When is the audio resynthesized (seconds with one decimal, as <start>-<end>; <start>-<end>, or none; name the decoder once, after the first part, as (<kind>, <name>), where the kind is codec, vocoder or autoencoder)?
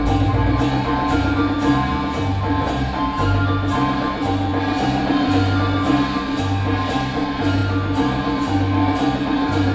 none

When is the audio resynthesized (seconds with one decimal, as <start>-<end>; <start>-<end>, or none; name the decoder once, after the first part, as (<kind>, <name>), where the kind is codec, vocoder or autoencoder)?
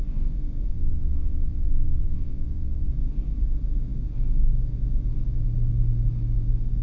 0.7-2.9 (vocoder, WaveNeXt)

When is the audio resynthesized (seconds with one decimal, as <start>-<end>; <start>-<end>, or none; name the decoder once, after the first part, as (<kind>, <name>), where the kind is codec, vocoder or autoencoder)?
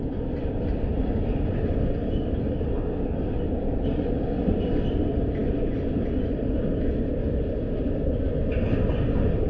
none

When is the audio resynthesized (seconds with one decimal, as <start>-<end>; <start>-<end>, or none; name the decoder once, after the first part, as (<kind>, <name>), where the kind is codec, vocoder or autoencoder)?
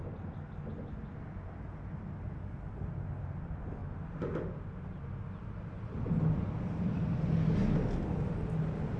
none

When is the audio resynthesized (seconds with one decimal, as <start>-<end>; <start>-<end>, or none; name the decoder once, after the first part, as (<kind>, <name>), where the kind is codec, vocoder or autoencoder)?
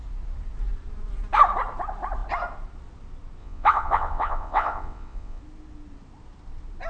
3.4-5.4 (vocoder, WaveNeXt)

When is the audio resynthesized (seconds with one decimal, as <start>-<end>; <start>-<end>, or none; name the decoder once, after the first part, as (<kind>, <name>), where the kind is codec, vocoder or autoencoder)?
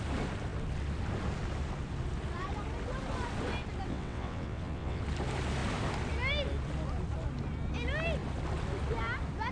3.9-5.0 (vocoder, WaveNeXt)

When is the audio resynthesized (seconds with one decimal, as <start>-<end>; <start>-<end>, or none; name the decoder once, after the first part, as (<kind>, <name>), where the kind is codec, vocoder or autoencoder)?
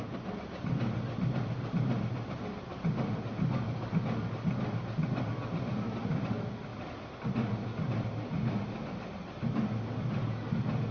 none